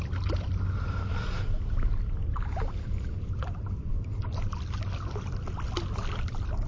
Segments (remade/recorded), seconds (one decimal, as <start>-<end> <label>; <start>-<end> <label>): 0.0-6.7 recorded

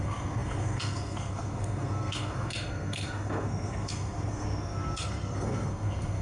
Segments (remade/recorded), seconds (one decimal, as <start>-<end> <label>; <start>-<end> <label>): 0.0-6.2 remade

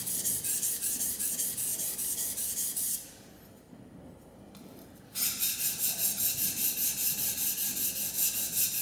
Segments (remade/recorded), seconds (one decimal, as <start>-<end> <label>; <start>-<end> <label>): 0.0-1.7 recorded; 1.7-2.7 remade; 2.7-7.0 recorded; 7.0-7.8 remade; 7.8-8.8 recorded

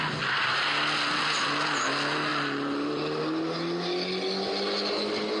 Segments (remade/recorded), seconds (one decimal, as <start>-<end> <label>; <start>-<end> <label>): 0.0-2.3 recorded; 2.3-3.2 remade; 3.2-5.4 recorded

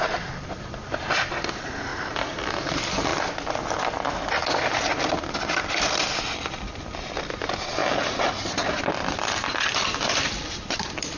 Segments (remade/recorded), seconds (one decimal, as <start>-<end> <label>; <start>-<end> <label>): 0.0-1.9 remade; 1.9-2.4 recorded; 2.4-3.1 remade; 3.1-6.2 recorded; 6.2-7.8 remade; 7.8-10.1 recorded; 10.1-11.2 remade

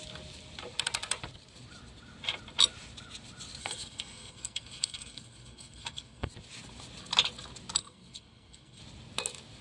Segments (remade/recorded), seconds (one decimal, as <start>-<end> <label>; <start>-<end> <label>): 0.0-3.6 recorded; 3.6-6.3 remade; 6.3-7.8 recorded; 7.8-8.8 remade; 8.8-9.6 recorded

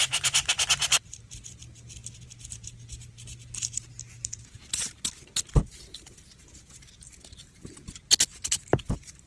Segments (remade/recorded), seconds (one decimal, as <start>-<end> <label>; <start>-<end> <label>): 0.0-7.8 remade; 7.8-8.6 recorded; 8.6-9.3 remade

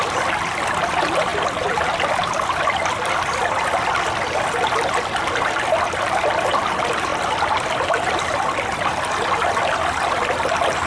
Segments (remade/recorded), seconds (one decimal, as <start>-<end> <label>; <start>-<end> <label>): 0.0-10.9 recorded